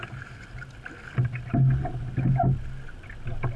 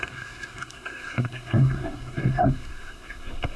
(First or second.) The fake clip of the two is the second